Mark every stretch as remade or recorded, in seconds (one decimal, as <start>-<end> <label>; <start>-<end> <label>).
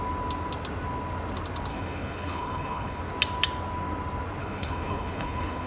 0.0-1.7 recorded; 1.7-3.0 remade; 3.0-4.4 recorded; 4.4-5.7 remade